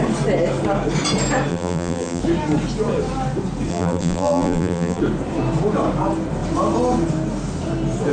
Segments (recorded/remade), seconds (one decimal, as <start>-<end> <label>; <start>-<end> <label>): 0.0-1.5 recorded; 1.5-2.2 remade; 2.2-3.7 recorded; 3.7-5.0 remade; 5.0-8.1 recorded